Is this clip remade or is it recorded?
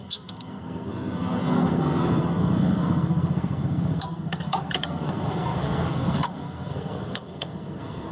remade